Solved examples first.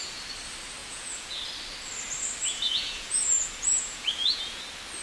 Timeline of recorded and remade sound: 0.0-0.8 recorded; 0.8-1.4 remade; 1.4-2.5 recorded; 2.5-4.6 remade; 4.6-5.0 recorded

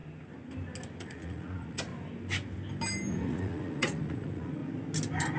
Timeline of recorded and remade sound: 0.0-1.0 recorded; 1.0-1.9 remade; 1.9-3.1 recorded; 3.1-4.6 remade; 4.6-5.4 recorded

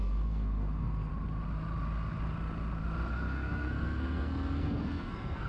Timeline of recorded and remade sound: 0.0-1.1 remade; 1.1-3.1 recorded; 3.1-5.5 remade

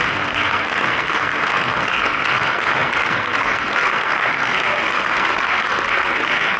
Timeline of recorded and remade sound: 0.0-6.6 remade

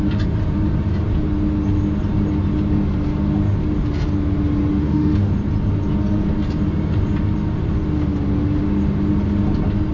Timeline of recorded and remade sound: 0.0-4.7 recorded; 4.7-5.3 remade; 5.3-9.9 recorded

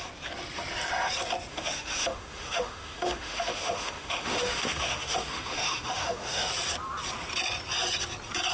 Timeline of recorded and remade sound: 0.0-1.5 recorded; 1.5-6.5 remade; 6.5-8.5 recorded